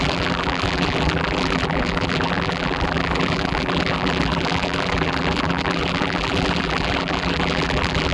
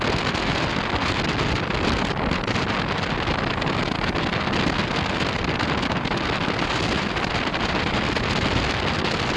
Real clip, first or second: second